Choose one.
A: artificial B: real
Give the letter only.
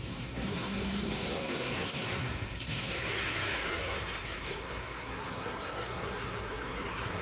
A